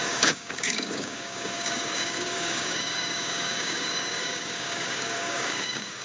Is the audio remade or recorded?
remade